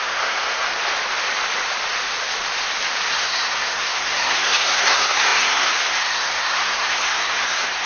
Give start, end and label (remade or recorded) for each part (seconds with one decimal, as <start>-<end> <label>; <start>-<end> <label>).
0.0-0.7 remade; 0.7-3.1 recorded; 3.1-7.9 remade

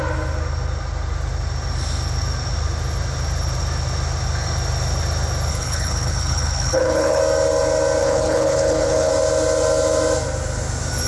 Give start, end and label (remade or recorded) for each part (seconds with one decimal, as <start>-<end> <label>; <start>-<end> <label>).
0.0-5.5 recorded; 5.5-7.2 remade; 7.2-8.0 recorded; 8.0-9.1 remade; 9.1-11.1 recorded

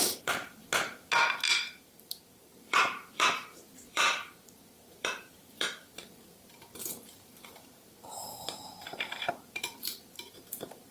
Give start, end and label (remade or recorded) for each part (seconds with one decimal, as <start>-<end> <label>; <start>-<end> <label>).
0.0-0.6 remade; 0.6-1.7 recorded; 1.7-10.9 remade

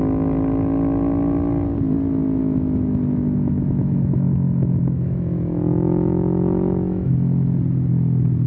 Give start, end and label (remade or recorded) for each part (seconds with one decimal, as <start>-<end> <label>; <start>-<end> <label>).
0.0-2.4 recorded; 2.4-7.1 remade; 7.1-8.5 recorded

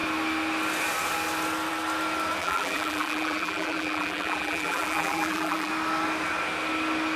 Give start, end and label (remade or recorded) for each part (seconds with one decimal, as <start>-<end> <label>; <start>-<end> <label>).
0.0-2.4 recorded; 2.4-5.7 remade; 5.7-7.2 recorded

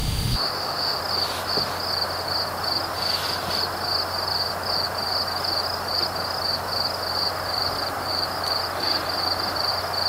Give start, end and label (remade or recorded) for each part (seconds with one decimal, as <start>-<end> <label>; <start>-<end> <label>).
0.0-1.0 remade; 1.0-10.1 recorded

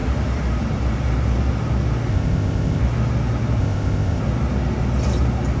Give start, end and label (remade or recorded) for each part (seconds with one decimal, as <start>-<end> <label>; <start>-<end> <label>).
0.0-2.1 recorded; 2.1-2.8 remade; 2.8-3.6 recorded; 3.6-4.2 remade; 4.2-5.6 recorded

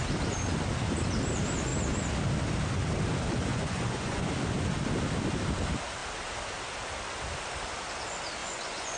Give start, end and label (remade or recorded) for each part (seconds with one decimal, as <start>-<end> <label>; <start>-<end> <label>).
0.0-3.5 recorded; 3.5-4.3 remade; 4.3-8.4 recorded; 8.4-9.0 remade